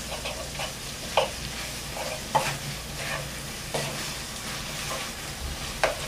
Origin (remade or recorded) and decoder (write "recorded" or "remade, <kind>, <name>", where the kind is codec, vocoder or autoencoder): recorded